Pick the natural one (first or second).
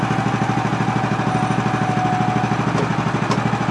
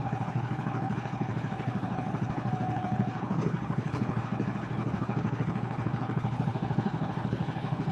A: first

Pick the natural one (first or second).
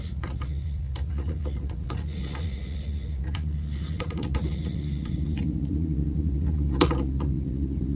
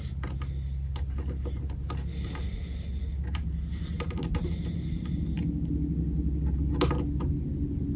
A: second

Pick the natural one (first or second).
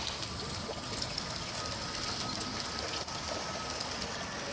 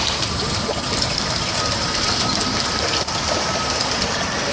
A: first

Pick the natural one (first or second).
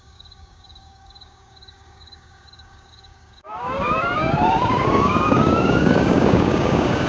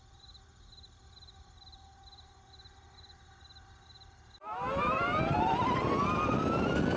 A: second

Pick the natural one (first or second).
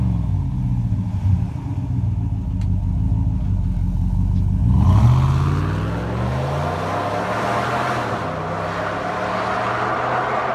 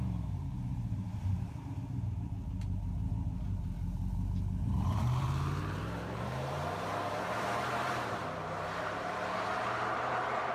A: first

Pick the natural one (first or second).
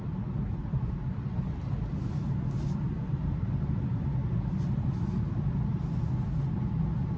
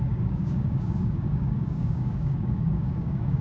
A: first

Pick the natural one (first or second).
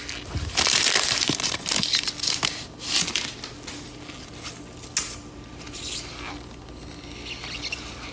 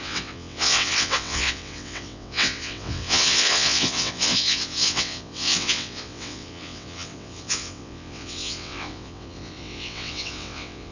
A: first